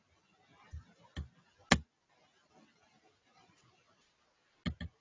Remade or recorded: recorded